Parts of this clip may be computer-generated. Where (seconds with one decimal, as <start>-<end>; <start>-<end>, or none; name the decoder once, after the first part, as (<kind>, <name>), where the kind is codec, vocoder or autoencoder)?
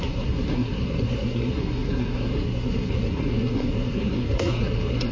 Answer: 0.0-5.1 (codec, SNAC)